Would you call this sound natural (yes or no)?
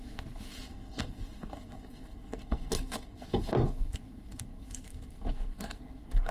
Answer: no